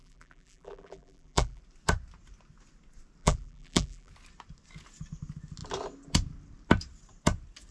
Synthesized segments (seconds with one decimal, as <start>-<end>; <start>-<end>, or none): 0.0-1.6; 3.2-4.1